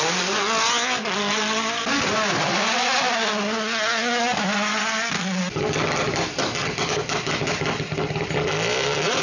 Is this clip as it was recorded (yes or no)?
yes